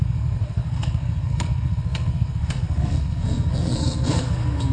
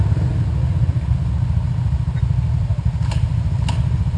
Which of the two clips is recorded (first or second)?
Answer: second